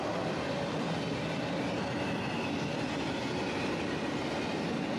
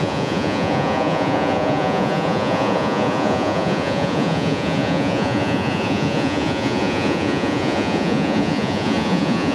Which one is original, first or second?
first